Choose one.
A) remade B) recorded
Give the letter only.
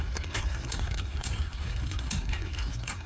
A